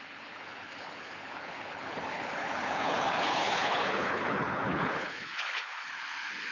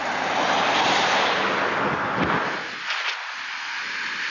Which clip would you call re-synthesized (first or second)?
first